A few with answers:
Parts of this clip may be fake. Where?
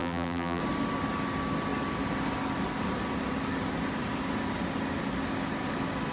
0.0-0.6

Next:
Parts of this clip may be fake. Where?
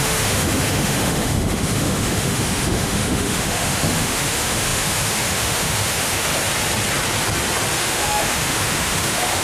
0.0-6.3; 7.8-9.4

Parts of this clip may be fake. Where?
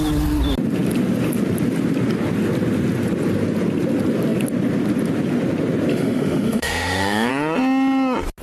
5.9-7.3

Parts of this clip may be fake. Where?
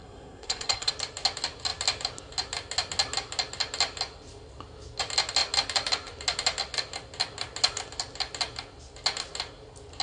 0.0-0.9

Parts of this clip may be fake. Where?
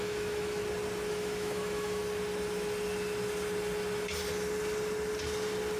0.0-0.6; 1.1-2.0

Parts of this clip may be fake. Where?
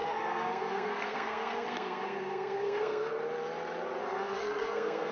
0.0-3.1; 4.0-5.1